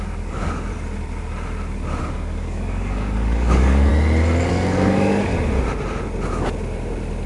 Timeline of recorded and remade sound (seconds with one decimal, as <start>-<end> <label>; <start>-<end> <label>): 0.0-0.7 remade; 0.7-2.0 recorded; 2.0-3.9 remade; 3.9-4.5 recorded; 4.5-5.3 remade; 5.3-7.3 recorded